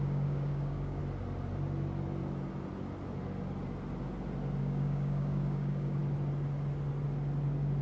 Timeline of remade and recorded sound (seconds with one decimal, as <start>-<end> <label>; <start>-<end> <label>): 0.0-1.0 remade; 1.0-4.6 recorded; 4.6-6.0 remade; 6.0-7.8 recorded